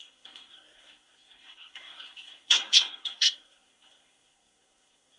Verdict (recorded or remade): remade